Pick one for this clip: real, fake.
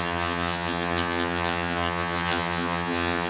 fake